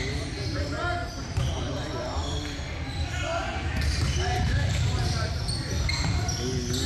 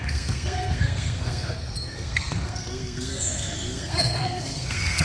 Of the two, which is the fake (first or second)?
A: second